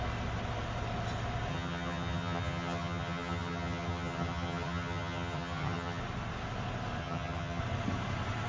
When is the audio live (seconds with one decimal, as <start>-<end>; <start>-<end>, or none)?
0.0-1.5; 6.0-7.0; 7.6-8.5